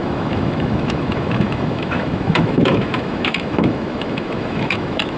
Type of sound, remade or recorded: remade